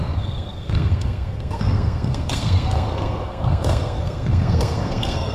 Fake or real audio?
fake